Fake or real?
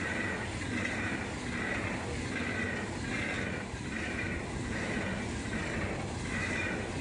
real